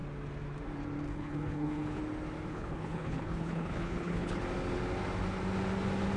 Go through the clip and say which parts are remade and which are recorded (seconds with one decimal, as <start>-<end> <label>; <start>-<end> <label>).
0.0-1.1 recorded; 1.1-2.0 remade; 2.0-2.5 recorded; 2.5-4.4 remade; 4.4-6.2 recorded